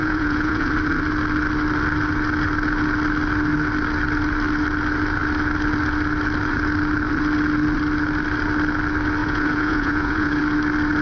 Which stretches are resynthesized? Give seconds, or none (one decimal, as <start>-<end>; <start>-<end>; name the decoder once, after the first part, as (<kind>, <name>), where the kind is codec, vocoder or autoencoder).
0.0-0.7 (vocoder, Vocos); 9.2-10.4